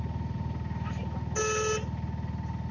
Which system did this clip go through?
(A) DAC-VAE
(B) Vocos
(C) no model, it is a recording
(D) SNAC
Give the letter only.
C